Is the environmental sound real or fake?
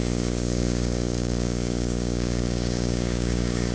fake